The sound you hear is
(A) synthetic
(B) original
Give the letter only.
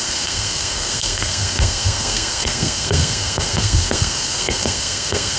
A